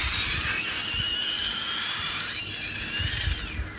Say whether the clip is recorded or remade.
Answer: recorded